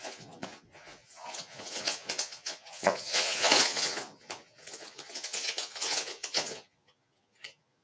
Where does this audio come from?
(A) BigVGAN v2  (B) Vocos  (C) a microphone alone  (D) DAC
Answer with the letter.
B